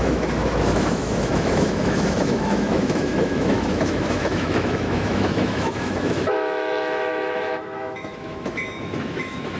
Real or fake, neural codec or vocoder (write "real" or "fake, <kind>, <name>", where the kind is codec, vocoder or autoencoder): fake, autoencoder, DAC-VAE